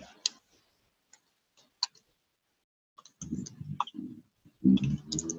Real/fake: real